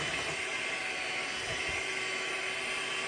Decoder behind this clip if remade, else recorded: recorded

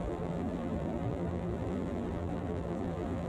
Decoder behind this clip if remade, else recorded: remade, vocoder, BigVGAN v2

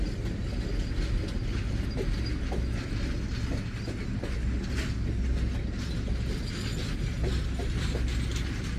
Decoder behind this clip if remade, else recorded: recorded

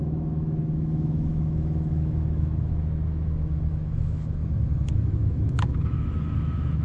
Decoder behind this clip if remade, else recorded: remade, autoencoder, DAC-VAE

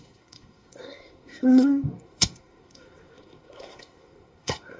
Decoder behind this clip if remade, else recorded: remade, codec, SNAC